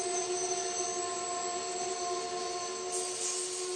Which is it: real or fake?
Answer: real